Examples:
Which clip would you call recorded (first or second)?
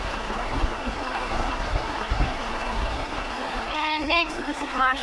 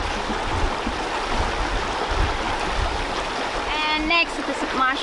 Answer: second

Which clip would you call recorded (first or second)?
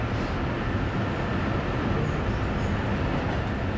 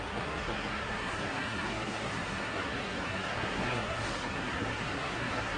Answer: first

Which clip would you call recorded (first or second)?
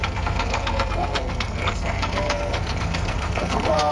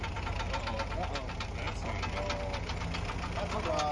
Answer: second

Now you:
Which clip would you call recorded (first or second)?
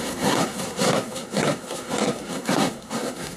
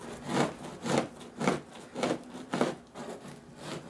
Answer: second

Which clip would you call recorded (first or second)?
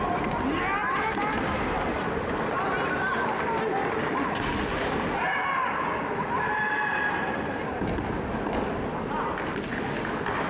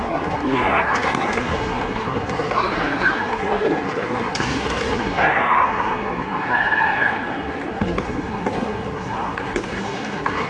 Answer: first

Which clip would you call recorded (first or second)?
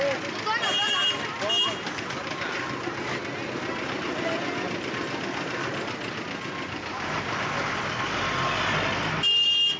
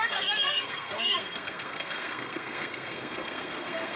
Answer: first